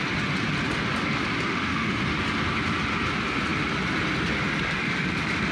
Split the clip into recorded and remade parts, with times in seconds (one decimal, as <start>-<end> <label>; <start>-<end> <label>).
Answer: 0.0-1.5 recorded; 1.5-2.1 remade; 2.1-5.5 recorded